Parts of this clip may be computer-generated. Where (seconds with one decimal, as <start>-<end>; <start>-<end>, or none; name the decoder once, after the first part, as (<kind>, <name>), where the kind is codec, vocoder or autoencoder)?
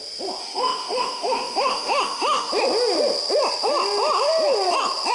0.4-2.5 (autoencoder, DAC-VAE)